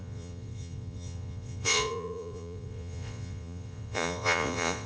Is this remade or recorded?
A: remade